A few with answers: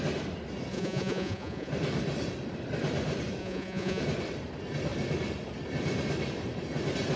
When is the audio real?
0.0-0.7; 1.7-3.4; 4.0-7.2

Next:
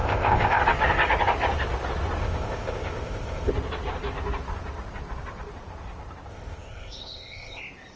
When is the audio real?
0.6-2.2; 3.5-6.3; 7.6-8.0

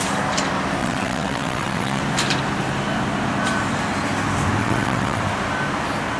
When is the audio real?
0.0-0.8; 2.0-4.6; 5.2-6.2

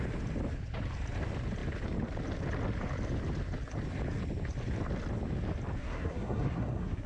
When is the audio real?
0.0-5.8